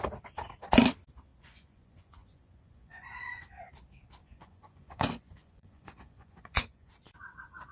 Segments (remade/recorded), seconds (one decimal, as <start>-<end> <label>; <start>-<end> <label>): 0.0-1.3 recorded; 1.3-3.7 remade; 3.7-4.2 recorded; 4.2-6.9 remade; 6.9-7.7 recorded